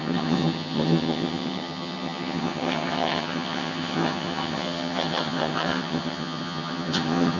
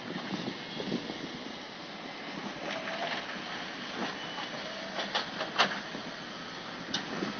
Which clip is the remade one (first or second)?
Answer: first